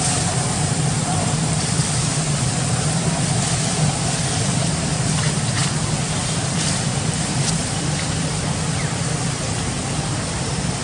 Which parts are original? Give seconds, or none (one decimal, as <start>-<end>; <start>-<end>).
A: 5.6-6.2